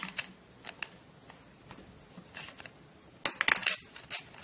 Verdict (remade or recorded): recorded